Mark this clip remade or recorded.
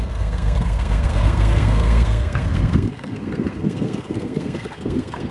remade